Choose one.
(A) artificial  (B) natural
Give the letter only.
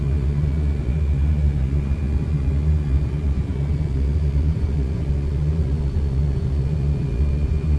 A